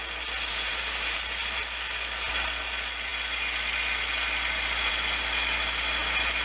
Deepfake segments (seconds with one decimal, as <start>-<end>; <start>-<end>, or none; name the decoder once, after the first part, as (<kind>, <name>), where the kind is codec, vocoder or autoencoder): 0.5-1.6 (vocoder, BigVGAN v2)